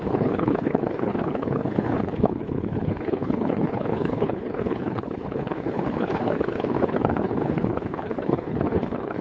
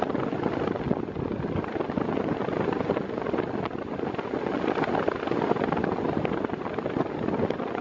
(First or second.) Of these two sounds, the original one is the second